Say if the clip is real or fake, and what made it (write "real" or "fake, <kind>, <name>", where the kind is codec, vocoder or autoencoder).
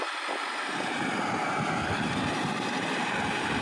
real